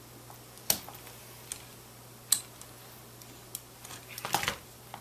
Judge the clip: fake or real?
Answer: real